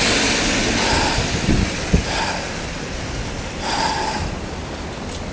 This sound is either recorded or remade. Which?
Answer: recorded